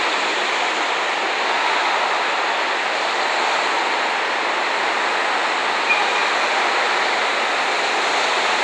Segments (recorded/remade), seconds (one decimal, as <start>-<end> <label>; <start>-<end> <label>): 0.0-8.6 recorded